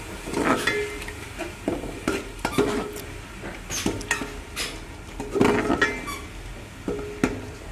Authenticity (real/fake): real